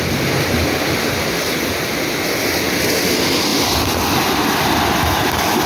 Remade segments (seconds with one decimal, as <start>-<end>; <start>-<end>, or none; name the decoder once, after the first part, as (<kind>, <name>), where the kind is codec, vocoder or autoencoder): none